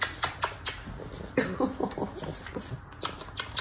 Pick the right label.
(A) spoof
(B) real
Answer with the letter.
B